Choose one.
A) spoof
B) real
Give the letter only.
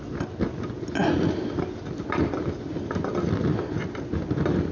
B